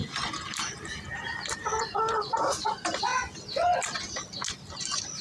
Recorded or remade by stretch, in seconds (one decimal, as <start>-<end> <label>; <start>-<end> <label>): 0.0-1.8 recorded; 1.8-3.1 remade; 3.1-4.8 recorded; 4.8-5.2 remade